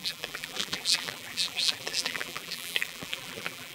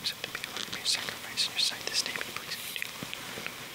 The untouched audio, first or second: second